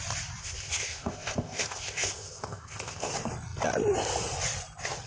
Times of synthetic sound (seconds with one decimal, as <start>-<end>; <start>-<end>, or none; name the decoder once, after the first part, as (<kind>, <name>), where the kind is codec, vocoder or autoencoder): 0.4-3.1 (codec, ZipCodec)